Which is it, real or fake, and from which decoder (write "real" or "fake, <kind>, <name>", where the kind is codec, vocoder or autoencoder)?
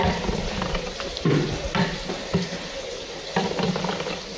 fake, vocoder, BigVGAN v2